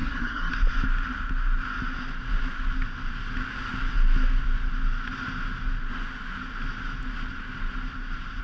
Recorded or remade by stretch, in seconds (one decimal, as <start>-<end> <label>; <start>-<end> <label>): 0.0-0.5 remade; 0.5-8.4 recorded